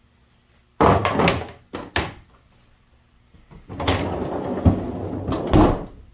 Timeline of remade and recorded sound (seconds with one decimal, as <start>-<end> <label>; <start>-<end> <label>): 0.0-6.1 recorded